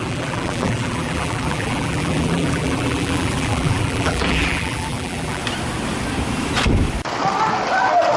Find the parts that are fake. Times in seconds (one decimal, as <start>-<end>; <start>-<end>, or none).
0.0-5.4